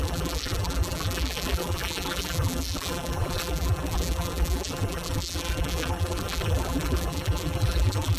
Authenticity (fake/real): fake